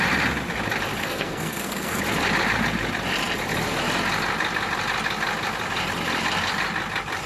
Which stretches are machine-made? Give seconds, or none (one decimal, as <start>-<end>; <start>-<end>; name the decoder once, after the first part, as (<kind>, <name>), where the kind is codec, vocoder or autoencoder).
1.0-2.0 (codec, SNAC)

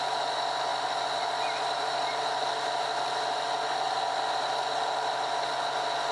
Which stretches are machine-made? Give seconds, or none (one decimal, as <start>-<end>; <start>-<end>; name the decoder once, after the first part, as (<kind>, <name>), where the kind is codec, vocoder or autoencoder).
none

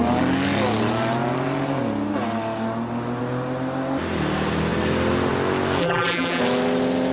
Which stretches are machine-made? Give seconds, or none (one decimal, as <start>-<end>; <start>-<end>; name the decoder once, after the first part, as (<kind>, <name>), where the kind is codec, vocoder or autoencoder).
5.8-6.4 (vocoder, BigVGAN v2)

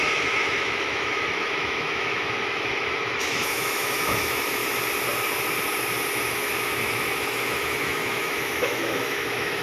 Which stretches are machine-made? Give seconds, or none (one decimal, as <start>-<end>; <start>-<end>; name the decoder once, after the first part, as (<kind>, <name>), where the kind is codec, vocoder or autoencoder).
0.0-4.6 (autoencoder, DAC-VAE); 6.3-9.6